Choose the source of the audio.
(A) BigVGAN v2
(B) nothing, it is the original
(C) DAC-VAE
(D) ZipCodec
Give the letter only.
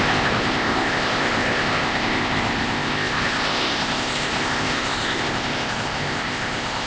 D